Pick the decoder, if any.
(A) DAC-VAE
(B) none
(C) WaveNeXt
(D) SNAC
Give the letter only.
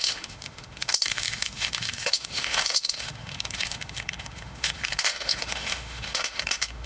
A